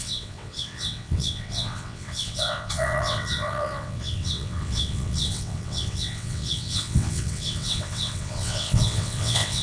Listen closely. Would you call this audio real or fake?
fake